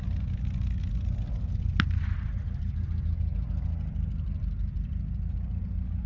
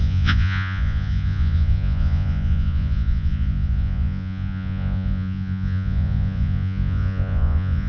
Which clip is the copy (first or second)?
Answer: second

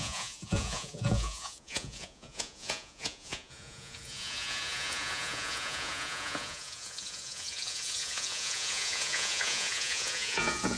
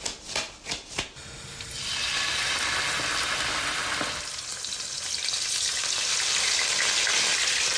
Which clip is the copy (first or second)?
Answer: first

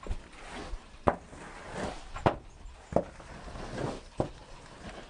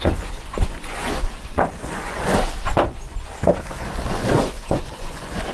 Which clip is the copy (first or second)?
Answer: second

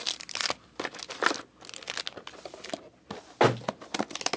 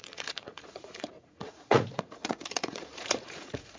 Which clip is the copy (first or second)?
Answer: second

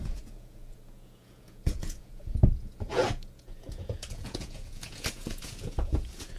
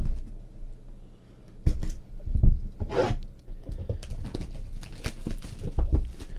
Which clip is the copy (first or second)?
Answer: first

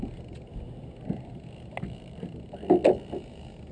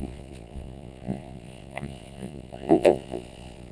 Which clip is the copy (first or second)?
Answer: second